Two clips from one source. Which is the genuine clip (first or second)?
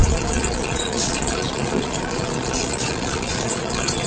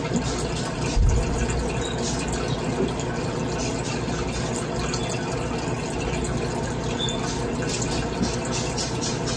second